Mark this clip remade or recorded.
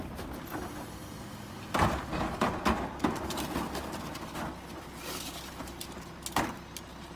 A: recorded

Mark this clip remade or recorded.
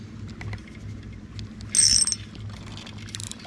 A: recorded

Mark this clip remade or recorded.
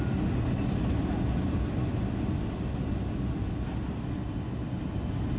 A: recorded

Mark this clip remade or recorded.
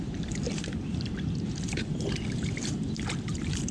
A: remade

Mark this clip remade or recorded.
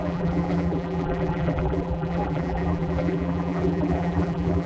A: remade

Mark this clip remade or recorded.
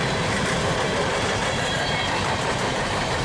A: remade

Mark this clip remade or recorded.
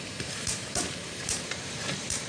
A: remade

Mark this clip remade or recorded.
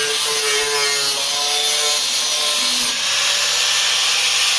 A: recorded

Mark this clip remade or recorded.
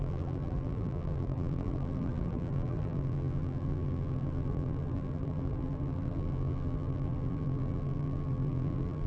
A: remade